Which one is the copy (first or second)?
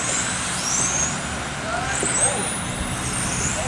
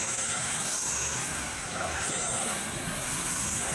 second